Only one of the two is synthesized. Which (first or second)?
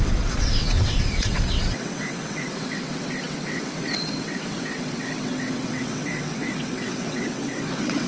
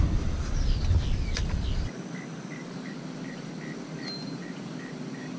first